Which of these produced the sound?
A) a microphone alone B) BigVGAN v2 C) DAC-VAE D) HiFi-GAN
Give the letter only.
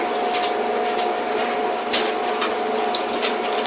A